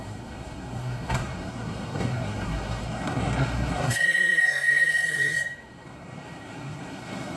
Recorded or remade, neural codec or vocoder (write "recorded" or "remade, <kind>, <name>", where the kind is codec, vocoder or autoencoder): remade, codec, SNAC